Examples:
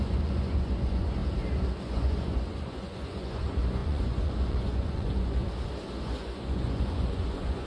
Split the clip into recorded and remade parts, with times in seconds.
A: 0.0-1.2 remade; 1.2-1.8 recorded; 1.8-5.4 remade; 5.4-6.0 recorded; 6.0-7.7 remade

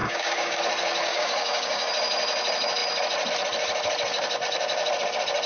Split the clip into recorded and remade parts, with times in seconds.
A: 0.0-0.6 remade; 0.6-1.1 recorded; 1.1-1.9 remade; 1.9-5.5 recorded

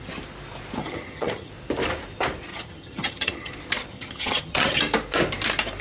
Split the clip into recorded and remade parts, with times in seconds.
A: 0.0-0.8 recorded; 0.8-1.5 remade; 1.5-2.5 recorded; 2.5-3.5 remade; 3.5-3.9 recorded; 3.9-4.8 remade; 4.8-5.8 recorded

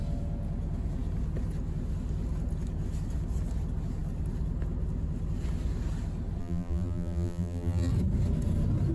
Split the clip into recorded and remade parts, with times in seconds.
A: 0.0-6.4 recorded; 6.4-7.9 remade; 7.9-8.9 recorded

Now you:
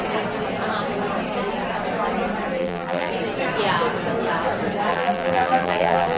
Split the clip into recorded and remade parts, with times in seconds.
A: 0.0-2.6 recorded; 2.6-3.1 remade; 3.1-4.9 recorded; 4.9-6.2 remade

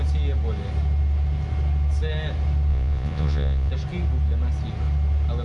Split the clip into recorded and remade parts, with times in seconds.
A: 0.0-2.7 recorded; 2.7-3.7 remade; 3.7-5.4 recorded

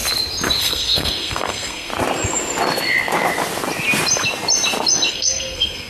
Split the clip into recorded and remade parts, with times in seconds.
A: 0.0-0.6 recorded; 0.6-1.9 remade; 1.9-5.1 recorded; 5.1-5.9 remade

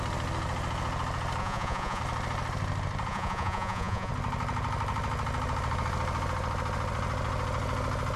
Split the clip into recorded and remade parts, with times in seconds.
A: 0.0-1.4 recorded; 1.4-2.0 remade; 2.0-3.1 recorded; 3.1-4.1 remade; 4.1-8.2 recorded